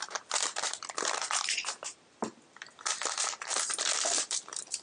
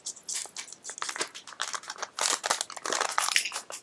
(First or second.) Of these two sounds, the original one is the second